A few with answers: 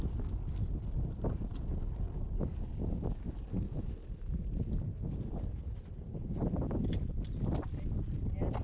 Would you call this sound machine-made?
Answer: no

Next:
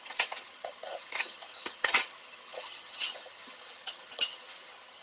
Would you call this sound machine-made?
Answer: yes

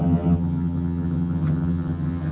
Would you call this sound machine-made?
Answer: yes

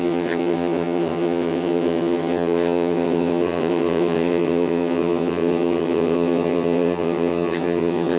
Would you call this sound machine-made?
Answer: yes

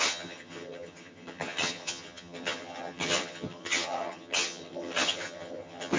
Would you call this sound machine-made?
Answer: yes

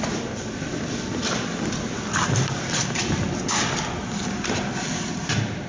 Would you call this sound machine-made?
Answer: no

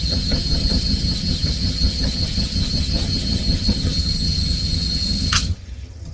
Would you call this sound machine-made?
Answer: yes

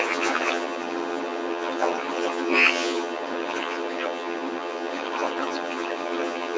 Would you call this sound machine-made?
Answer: yes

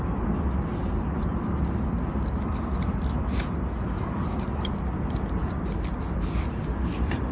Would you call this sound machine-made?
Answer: no